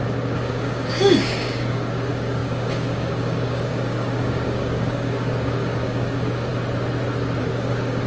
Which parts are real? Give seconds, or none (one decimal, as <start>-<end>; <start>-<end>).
6.5-7.4